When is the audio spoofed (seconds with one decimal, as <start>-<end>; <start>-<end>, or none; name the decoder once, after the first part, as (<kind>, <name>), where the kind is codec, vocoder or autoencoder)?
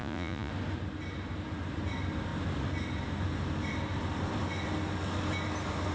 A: 0.0-0.5 (vocoder, Vocos)